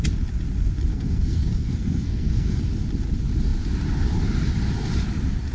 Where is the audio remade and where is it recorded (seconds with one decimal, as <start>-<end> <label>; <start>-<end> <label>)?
0.0-0.9 recorded; 0.9-2.6 remade; 2.6-5.5 recorded